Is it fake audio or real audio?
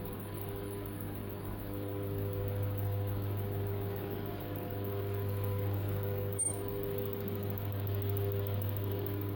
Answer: fake